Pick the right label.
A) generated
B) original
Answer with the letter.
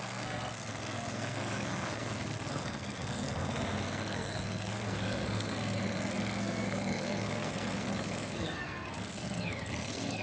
A